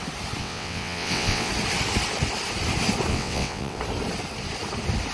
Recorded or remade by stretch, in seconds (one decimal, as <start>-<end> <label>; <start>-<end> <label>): 0.0-0.4 recorded; 0.4-1.5 remade; 1.5-3.1 recorded; 3.1-3.8 remade; 3.8-5.1 recorded